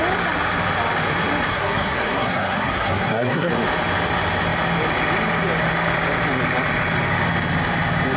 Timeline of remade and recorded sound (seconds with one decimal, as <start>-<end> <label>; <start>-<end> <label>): 0.0-1.5 recorded; 1.5-3.5 remade; 3.5-8.2 recorded